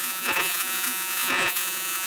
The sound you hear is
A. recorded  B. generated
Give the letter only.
B